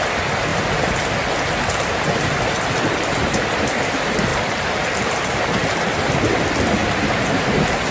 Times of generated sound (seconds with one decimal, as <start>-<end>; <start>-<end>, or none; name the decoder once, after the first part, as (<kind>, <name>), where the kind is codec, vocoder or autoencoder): 0.5-1.1 (vocoder, BigVGAN v2); 4.3-5.5; 6.8-7.5